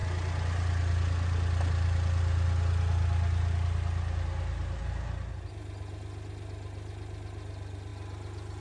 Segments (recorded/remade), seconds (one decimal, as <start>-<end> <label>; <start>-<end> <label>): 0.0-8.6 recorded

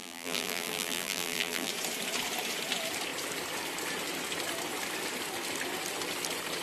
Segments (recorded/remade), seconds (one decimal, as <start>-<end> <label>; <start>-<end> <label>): 0.0-1.7 remade; 1.7-6.6 recorded

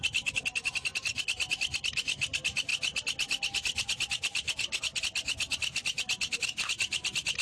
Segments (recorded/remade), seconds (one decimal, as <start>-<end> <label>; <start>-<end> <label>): 0.0-7.4 recorded

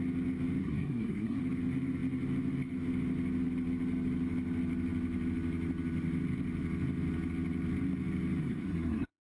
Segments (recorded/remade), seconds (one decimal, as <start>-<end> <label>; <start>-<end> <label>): 0.0-0.6 recorded; 0.6-1.4 remade; 1.4-8.4 recorded; 8.4-9.2 remade

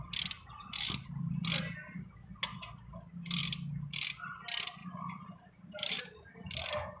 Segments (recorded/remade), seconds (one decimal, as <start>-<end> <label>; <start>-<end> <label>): 0.0-4.8 recorded; 4.8-6.0 remade; 6.0-7.0 recorded

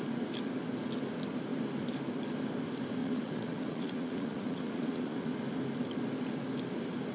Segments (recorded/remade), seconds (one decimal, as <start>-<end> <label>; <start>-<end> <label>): 0.0-3.0 recorded; 3.0-5.3 remade; 5.3-7.1 recorded